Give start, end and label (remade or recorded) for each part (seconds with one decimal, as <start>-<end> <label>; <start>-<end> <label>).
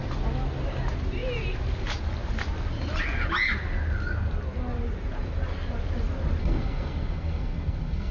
0.0-6.4 recorded; 6.4-8.1 remade